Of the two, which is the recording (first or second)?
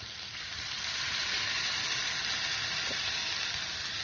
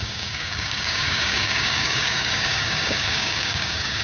first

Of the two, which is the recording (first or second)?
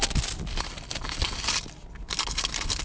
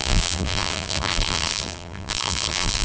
first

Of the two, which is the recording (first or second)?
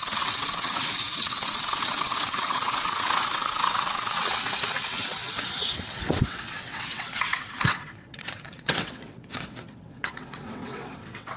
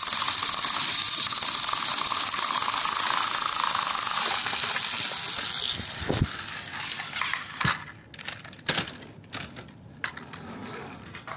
second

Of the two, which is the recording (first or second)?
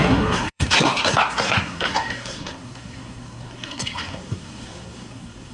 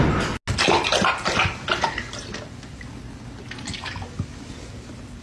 second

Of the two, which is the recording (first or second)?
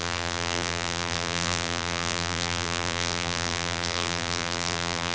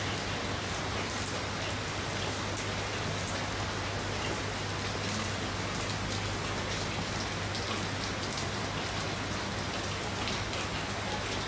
second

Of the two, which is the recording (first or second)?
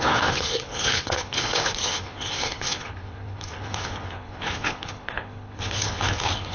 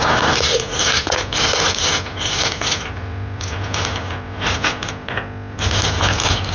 second